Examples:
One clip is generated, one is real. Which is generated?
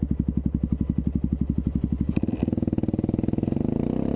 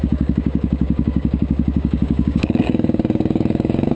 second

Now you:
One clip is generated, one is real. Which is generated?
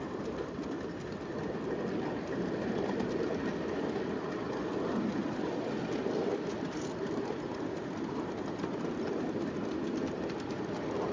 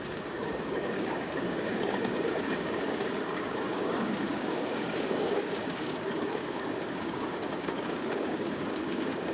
second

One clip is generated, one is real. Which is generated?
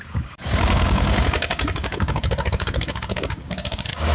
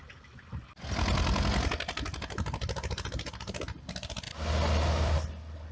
first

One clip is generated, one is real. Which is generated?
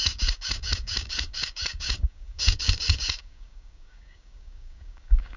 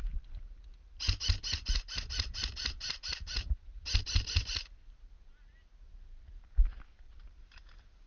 first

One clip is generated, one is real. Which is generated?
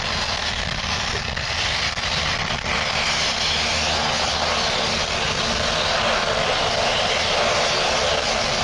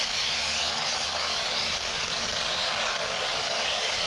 second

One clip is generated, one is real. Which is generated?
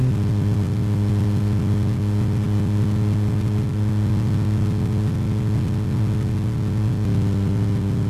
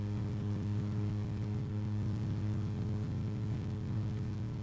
second